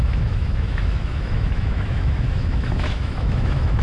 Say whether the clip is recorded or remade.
remade